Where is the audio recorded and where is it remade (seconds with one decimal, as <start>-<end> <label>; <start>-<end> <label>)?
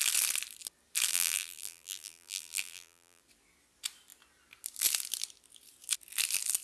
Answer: 0.0-1.1 recorded; 1.1-3.2 remade; 3.2-6.6 recorded